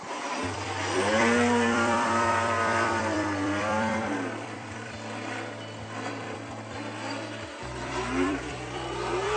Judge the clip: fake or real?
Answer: fake